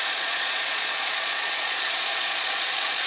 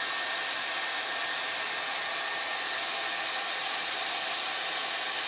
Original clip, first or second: second